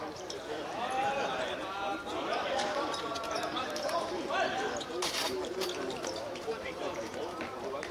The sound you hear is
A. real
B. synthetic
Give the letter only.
B